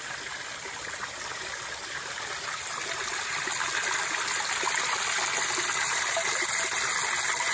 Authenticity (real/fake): real